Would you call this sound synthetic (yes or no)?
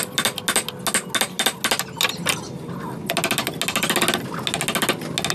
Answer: no